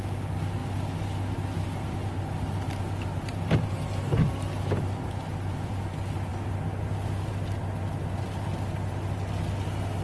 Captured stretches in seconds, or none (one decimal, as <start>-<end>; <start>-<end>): 0.0-10.0